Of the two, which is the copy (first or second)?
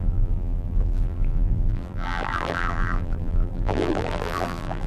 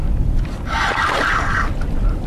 first